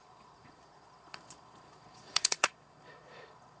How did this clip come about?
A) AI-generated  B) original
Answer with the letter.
A